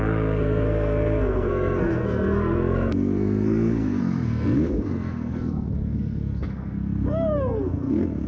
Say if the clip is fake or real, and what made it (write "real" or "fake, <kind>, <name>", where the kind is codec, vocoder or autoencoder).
fake, codec, SNAC